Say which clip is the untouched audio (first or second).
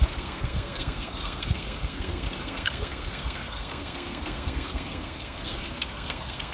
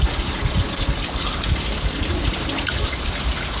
second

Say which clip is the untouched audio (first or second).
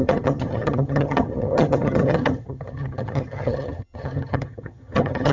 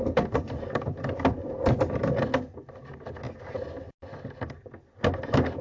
second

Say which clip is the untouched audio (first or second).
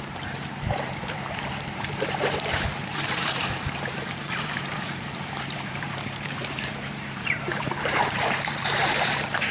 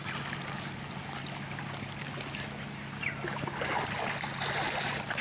second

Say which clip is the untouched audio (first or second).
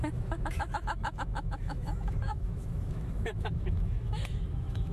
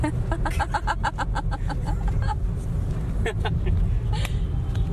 second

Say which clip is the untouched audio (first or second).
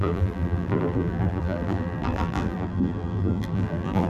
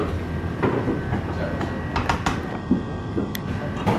second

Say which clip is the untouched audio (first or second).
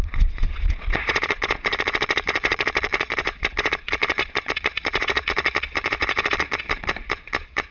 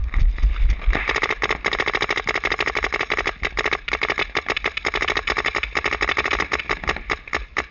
second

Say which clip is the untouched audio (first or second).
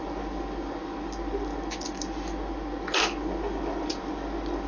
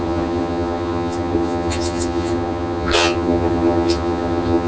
first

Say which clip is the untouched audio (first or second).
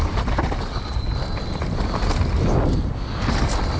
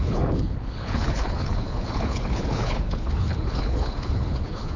first